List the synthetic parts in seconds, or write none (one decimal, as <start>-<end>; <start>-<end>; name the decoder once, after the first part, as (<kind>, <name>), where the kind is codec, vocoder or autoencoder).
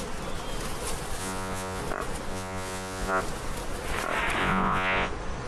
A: 1.2-1.8 (vocoder, Vocos); 2.3-3.2; 4.4-5.1